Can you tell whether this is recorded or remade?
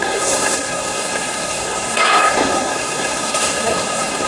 remade